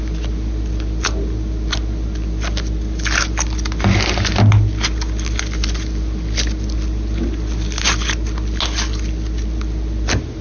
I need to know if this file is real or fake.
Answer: real